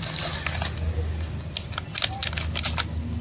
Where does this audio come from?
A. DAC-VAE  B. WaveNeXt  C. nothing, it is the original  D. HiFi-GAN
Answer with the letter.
C